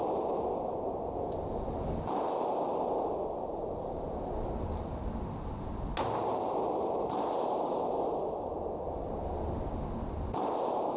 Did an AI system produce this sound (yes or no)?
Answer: no